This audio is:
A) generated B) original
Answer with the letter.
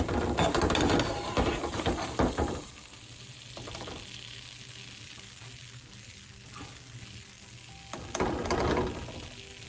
B